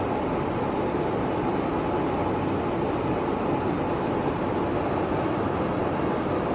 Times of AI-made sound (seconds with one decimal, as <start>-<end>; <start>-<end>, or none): none